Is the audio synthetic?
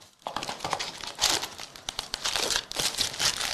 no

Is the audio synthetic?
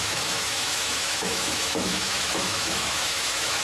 yes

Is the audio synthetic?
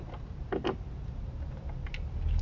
no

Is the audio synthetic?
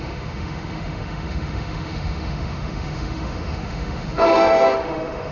yes